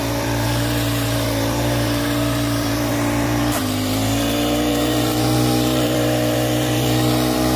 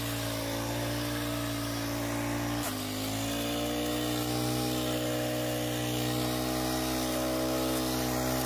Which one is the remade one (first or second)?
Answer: first